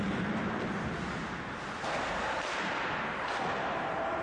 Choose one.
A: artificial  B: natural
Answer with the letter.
B